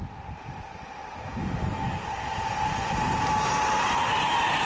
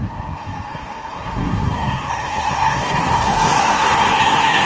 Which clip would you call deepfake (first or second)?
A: second